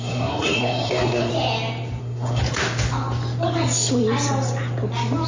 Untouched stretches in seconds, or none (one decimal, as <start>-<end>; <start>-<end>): 1.3-2.0; 2.4-5.3